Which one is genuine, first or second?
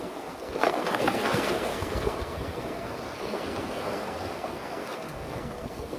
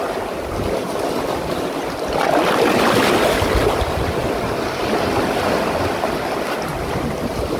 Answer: second